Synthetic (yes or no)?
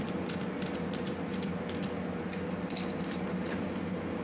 no